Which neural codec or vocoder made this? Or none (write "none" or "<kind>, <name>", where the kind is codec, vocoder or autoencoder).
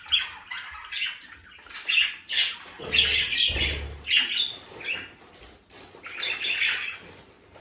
none